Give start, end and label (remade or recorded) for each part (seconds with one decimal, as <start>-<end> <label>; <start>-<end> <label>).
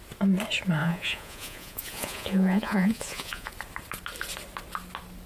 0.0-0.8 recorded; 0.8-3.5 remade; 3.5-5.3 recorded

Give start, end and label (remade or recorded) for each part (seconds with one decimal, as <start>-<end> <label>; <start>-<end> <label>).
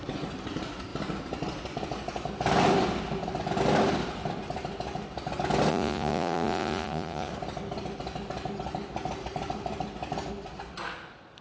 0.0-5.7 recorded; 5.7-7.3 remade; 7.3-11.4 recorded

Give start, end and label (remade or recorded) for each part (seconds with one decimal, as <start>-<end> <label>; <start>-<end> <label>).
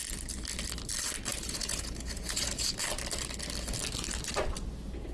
0.0-1.3 recorded; 1.3-2.8 remade; 2.8-5.1 recorded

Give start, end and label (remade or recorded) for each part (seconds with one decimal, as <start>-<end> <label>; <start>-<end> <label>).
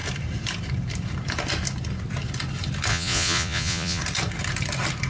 0.0-2.9 recorded; 2.9-4.0 remade; 4.0-5.1 recorded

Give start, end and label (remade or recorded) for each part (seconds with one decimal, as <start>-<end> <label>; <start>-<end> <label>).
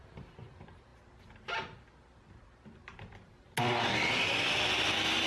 0.0-5.3 recorded